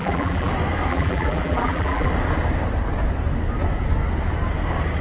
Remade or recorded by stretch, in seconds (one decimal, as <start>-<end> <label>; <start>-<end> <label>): 0.0-0.5 remade; 0.5-0.9 recorded; 0.9-2.1 remade; 2.1-5.0 recorded